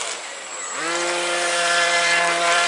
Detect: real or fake fake